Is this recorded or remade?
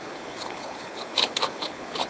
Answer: remade